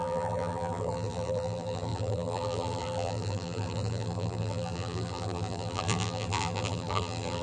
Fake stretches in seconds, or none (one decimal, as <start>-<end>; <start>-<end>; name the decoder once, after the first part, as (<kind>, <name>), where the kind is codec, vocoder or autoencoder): 0.0-7.4 (vocoder, BigVGAN v2)